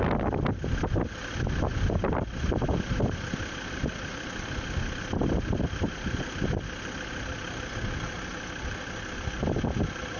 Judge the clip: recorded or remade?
recorded